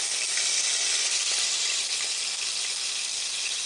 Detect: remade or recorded recorded